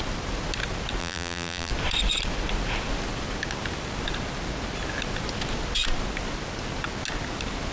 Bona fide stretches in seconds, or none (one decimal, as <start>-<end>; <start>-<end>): 0.0-1.0; 1.7-7.7